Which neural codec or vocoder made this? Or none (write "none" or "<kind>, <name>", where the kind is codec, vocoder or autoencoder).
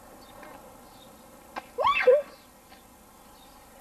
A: none